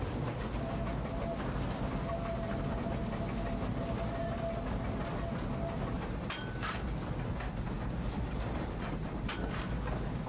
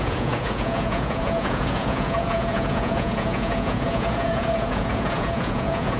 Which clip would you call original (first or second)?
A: first